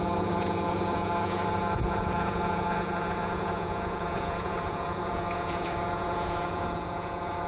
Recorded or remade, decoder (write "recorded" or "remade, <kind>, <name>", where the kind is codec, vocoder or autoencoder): remade, vocoder, Vocos